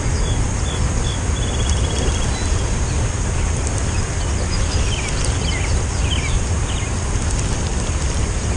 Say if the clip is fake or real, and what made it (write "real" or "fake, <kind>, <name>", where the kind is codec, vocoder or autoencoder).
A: real